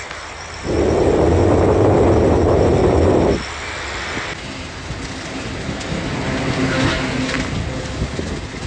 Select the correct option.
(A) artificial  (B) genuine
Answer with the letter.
B